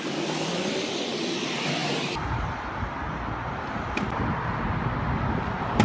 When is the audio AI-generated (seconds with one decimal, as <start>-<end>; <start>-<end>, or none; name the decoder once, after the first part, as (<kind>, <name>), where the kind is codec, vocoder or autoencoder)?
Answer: none